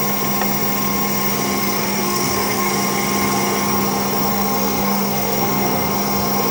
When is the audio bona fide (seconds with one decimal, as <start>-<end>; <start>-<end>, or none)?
0.0-1.6; 2.7-4.3; 5.9-6.5